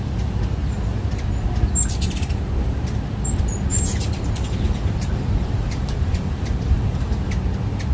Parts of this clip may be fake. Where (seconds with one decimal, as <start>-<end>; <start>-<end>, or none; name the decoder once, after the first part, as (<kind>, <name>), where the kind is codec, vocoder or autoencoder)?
3.7-7.3 (vocoder, BigVGAN v2)